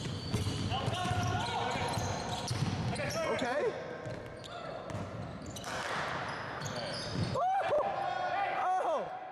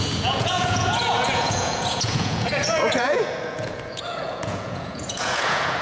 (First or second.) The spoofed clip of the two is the second